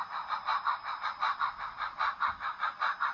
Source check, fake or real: real